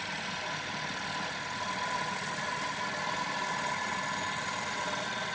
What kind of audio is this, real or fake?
real